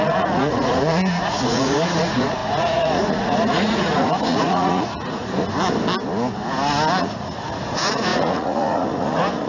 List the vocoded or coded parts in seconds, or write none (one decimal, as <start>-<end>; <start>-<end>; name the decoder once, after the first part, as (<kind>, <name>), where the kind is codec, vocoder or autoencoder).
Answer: 0.0-5.2 (vocoder, Vocos); 7.0-9.5